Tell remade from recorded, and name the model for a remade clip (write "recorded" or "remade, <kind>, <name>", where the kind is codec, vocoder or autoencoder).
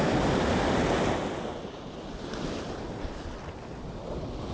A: recorded